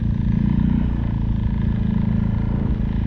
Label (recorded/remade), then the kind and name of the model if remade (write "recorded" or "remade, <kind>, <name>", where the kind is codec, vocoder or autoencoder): recorded